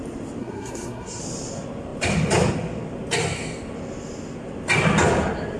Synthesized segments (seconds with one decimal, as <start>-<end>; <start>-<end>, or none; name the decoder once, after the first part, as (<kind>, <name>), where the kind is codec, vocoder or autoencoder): 0.4-1.2 (codec, SNAC)